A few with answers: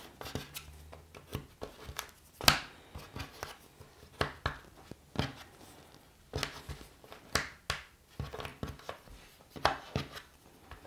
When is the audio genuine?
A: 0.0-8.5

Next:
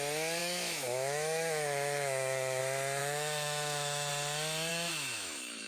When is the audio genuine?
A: 0.0-0.4; 2.6-3.0; 4.1-4.7

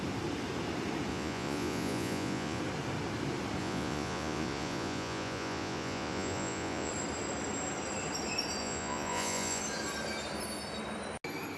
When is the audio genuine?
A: 0.0-1.1; 2.6-3.6; 6.9-8.6; 9.6-11.6

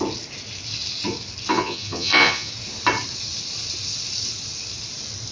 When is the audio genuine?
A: 0.0-1.5; 2.5-5.3